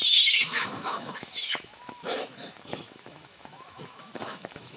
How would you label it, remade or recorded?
remade